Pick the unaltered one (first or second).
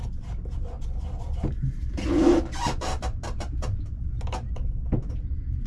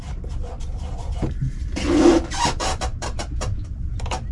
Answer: first